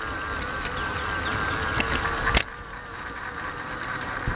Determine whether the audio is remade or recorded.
recorded